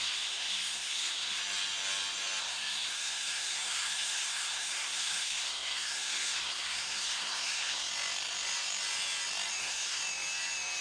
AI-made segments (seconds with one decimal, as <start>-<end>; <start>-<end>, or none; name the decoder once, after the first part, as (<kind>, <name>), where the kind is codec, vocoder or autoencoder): 0.0-1.4 (codec, SNAC); 2.4-7.9; 9.6-10.0